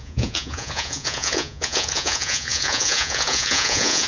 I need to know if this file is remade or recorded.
remade